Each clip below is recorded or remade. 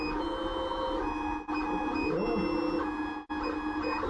recorded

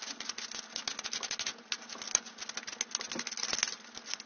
recorded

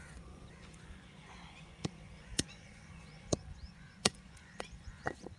remade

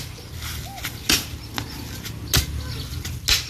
recorded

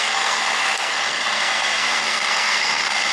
remade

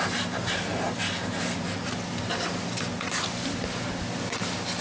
recorded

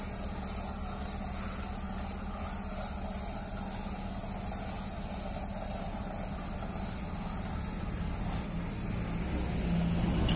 recorded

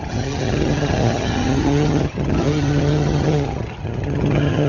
remade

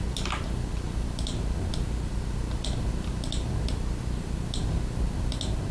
recorded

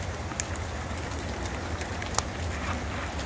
recorded